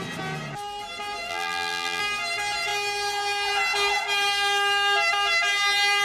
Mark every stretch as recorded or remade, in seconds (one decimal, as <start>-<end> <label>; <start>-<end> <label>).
0.0-1.3 recorded; 1.3-2.0 remade; 2.0-6.0 recorded